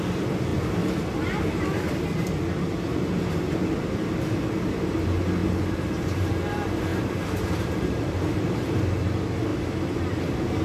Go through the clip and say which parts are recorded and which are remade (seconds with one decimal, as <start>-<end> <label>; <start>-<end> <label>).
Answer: 0.0-5.4 recorded; 5.4-6.2 remade; 6.2-6.9 recorded; 6.9-8.8 remade; 8.8-10.6 recorded